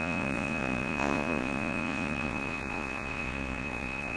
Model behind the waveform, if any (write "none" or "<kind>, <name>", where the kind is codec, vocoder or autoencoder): vocoder, Vocos